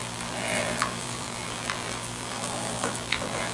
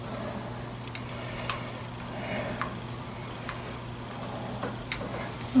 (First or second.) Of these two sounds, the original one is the second